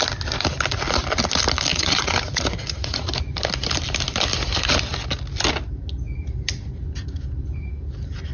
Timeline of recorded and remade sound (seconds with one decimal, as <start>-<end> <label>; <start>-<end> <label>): 0.0-1.7 recorded; 1.7-3.1 remade; 3.1-8.3 recorded